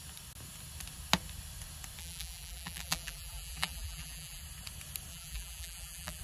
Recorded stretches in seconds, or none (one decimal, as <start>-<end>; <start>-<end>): 0.0-2.0; 4.4-5.1